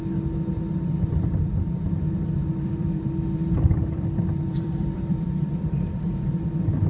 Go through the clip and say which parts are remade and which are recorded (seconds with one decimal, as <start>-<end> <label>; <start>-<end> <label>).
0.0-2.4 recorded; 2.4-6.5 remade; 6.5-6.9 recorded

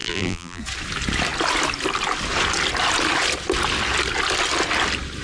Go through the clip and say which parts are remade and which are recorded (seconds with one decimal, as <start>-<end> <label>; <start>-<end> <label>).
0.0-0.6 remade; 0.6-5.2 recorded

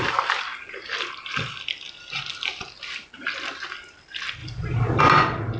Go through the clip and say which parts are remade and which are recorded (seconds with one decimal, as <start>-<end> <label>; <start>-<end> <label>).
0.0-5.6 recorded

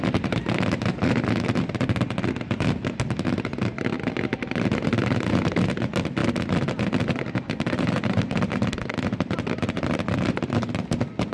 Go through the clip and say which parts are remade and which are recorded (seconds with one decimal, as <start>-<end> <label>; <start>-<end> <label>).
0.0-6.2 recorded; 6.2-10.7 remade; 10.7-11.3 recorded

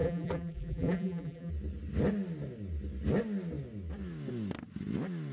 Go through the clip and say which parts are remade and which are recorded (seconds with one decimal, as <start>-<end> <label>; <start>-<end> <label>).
0.0-1.5 remade; 1.5-5.3 recorded

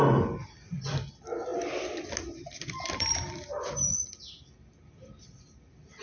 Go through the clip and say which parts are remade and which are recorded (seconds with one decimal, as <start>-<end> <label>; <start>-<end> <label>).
0.0-6.0 recorded